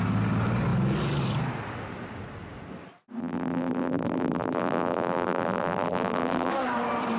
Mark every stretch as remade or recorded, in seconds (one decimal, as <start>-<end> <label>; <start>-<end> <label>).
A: 0.0-3.2 recorded; 3.2-6.5 remade; 6.5-7.2 recorded